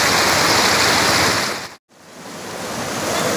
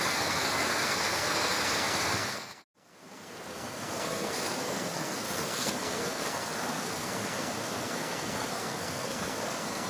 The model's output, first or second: second